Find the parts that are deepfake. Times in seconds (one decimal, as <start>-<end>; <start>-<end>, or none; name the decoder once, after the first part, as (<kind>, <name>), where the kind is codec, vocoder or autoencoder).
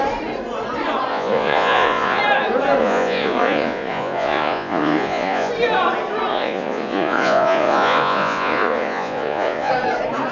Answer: 1.1-2.2 (vocoder, Vocos); 2.8-5.5; 6.3-9.7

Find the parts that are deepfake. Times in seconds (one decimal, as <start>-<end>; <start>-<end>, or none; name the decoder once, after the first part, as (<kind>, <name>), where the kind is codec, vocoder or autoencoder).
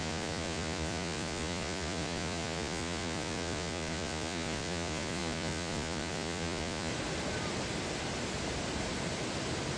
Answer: 0.0-6.9 (vocoder, Vocos)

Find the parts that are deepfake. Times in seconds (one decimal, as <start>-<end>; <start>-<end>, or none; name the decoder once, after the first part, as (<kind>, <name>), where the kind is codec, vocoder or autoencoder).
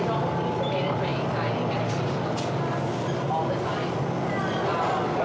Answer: none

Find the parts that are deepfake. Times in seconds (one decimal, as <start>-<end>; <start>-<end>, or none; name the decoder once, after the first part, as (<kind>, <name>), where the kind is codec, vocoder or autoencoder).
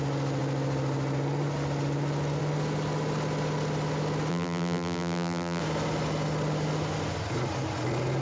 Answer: 4.3-5.6 (vocoder, BigVGAN v2)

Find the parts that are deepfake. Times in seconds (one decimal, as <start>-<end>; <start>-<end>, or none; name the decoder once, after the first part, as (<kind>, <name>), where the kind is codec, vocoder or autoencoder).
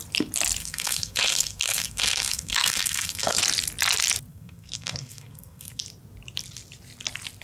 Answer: 0.6-3.4 (codec, SNAC); 4.3-5.8